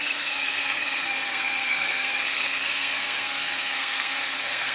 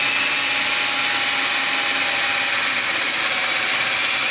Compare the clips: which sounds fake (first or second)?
first